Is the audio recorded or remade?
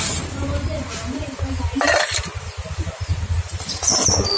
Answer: recorded